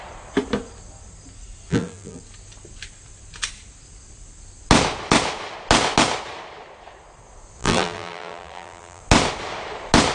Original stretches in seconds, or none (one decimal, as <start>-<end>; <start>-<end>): 0.0-1.7; 2.2-7.6; 9.0-10.1